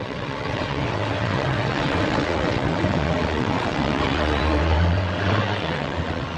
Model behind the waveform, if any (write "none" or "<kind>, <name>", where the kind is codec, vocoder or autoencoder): vocoder, WaveNeXt